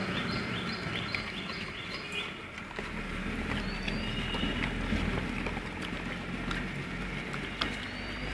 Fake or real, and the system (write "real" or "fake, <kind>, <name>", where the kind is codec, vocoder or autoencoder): real